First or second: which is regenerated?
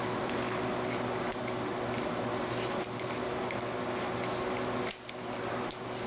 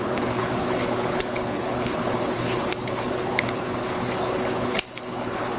second